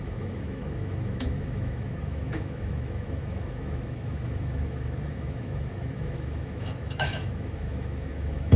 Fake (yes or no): yes